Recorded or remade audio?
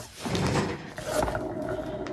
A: recorded